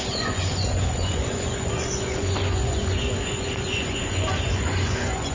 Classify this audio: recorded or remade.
remade